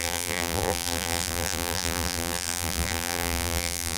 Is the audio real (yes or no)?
no